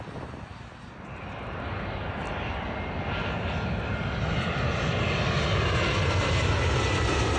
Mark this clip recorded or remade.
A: recorded